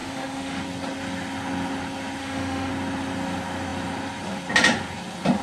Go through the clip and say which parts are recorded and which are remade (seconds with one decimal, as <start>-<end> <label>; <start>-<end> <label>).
0.0-0.6 remade; 0.6-2.2 recorded; 2.2-2.7 remade; 2.7-5.4 recorded